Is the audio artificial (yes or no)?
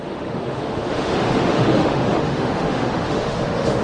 yes